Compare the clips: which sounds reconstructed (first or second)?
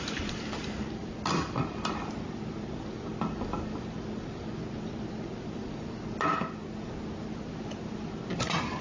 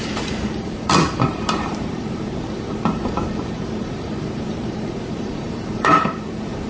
second